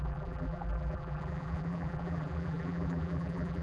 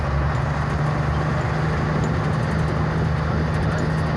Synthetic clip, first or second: first